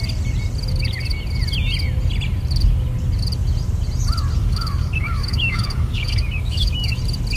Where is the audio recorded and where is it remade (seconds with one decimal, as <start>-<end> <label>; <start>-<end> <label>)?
0.0-4.4 recorded; 4.4-7.0 remade; 7.0-7.4 recorded